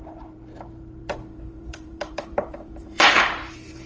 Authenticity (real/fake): fake